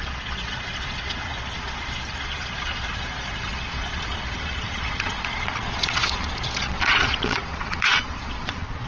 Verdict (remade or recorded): remade